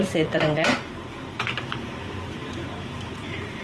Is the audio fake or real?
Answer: fake